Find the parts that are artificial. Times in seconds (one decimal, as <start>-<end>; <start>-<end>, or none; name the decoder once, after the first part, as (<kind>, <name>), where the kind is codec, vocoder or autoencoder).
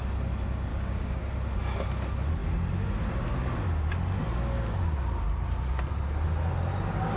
0.7-1.2 (codec, DAC)